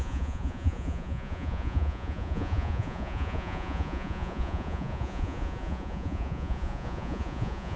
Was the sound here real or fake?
fake